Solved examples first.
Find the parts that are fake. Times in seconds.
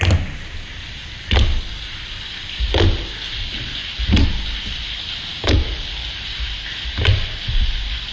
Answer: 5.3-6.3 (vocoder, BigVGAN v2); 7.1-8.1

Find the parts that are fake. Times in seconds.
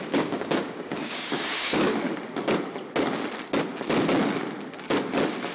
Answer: 0.0-1.9 (codec, DAC)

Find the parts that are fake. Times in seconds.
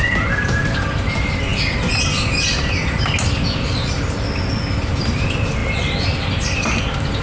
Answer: none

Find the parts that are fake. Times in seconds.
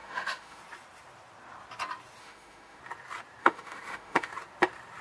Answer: 0.0-0.6 (autoencoder, DAC-VAE); 2.2-2.8; 3.4-4.3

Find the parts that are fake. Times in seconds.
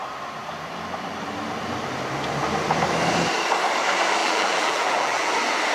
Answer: 4.2-5.3 (vocoder, BigVGAN v2)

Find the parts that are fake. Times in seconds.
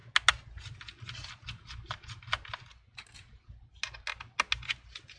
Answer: none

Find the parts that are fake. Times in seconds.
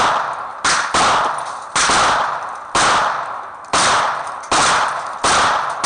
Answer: none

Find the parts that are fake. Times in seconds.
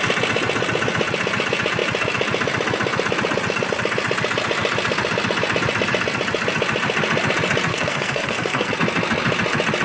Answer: 7.7-8.7 (codec, SNAC)